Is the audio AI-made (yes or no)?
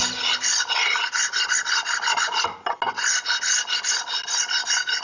no